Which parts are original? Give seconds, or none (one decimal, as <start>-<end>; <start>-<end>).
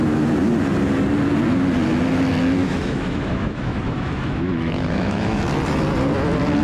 0.0-2.6; 5.4-6.6